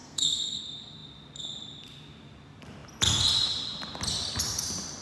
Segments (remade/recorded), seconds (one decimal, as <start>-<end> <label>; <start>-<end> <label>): 0.0-0.6 remade; 0.6-5.0 recorded

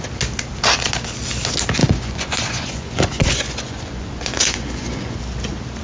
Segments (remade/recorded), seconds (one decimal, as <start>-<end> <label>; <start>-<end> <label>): 0.0-1.8 recorded; 1.8-5.2 remade; 5.2-5.8 recorded

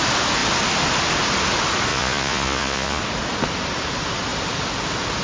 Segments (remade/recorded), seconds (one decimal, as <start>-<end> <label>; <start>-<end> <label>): 0.0-1.9 recorded; 1.9-3.0 remade; 3.0-5.2 recorded

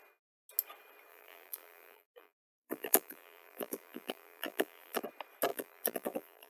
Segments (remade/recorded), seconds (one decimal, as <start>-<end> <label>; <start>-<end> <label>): 0.0-1.1 recorded; 1.1-5.0 remade; 5.0-5.5 recorded; 5.5-6.5 remade